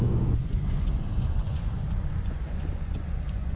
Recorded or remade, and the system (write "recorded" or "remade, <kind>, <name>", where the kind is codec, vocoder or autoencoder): remade, vocoder, Vocos